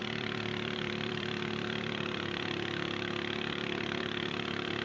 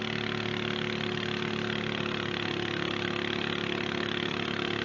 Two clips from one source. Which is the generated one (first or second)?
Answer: first